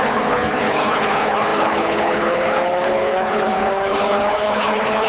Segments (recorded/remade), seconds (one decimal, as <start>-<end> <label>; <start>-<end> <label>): 0.0-5.1 remade